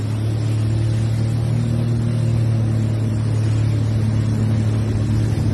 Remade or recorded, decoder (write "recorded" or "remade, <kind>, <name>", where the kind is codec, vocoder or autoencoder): recorded